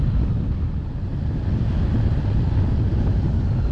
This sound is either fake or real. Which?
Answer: real